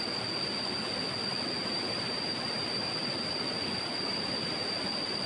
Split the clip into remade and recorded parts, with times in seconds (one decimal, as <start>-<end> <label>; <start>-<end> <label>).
0.0-1.6 recorded; 1.6-4.8 remade; 4.8-5.3 recorded